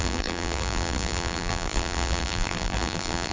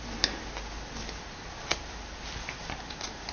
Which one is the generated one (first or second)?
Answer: first